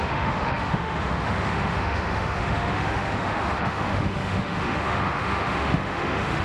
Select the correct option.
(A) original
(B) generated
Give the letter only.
B